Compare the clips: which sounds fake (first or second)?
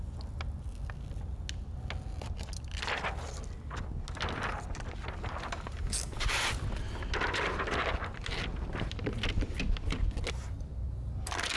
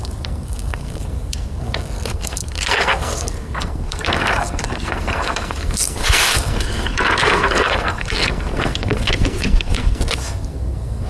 second